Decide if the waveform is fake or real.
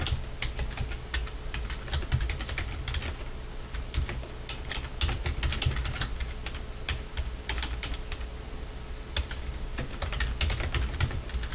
real